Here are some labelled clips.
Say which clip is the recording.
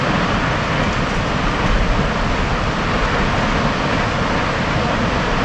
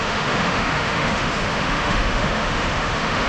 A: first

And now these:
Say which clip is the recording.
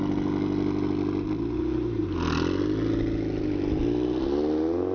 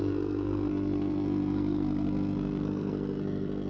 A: first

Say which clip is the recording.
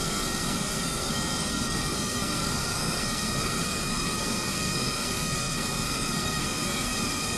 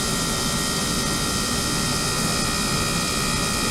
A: second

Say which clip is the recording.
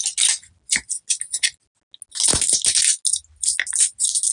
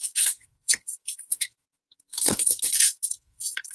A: first